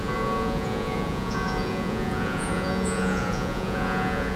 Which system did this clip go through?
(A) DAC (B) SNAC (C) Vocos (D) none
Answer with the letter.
C